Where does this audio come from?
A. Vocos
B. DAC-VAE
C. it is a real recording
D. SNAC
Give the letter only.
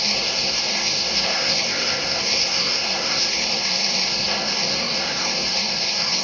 D